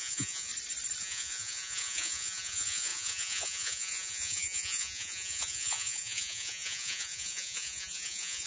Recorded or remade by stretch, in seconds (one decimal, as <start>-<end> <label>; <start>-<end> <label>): 0.0-0.5 remade; 0.5-1.0 recorded; 1.0-8.5 remade